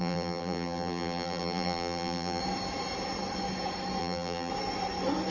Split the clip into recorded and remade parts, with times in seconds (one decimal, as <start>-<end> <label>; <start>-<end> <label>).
0.0-2.4 remade; 2.4-4.0 recorded; 4.0-4.5 remade; 4.5-5.3 recorded